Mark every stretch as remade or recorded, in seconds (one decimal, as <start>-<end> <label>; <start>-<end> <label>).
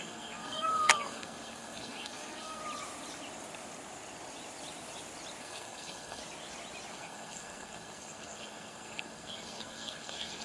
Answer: 0.0-2.6 remade; 2.6-5.4 recorded; 5.4-6.2 remade; 6.2-6.9 recorded; 6.9-10.4 remade